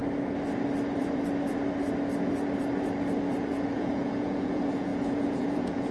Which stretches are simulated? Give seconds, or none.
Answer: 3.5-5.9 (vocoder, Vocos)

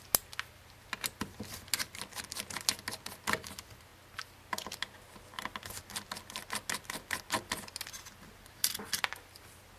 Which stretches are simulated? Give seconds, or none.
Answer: none

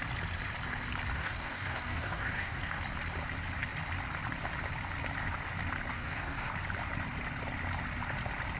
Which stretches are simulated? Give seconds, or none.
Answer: 1.1-2.8 (codec, DAC); 5.9-6.5

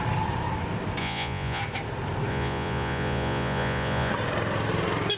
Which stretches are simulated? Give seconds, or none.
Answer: 1.0-1.6 (vocoder, Vocos); 2.3-4.1

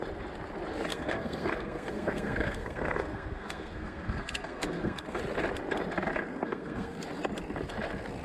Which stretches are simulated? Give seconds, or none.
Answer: 0.9-5.2 (codec, SNAC); 6.3-7.0